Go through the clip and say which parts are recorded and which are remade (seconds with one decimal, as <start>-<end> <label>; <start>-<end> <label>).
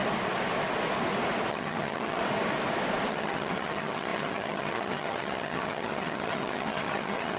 0.0-1.5 recorded; 1.5-2.2 remade; 2.2-3.1 recorded; 3.1-7.4 remade